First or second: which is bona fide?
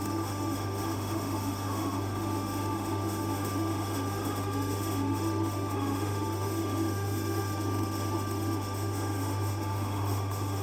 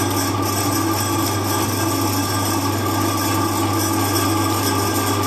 second